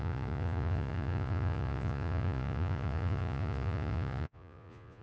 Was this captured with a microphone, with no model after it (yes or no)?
no